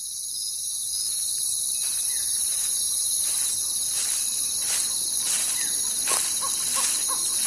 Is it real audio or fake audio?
real